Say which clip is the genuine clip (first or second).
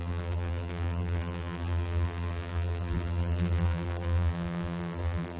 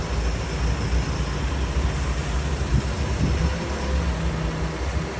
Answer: second